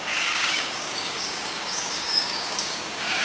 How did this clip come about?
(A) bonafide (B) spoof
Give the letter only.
B